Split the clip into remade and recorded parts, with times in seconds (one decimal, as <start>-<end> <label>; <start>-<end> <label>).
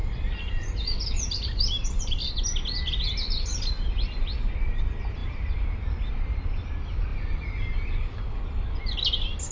0.0-2.3 remade; 2.3-2.9 recorded; 2.9-4.5 remade; 4.5-5.2 recorded; 5.2-6.1 remade; 6.1-9.5 recorded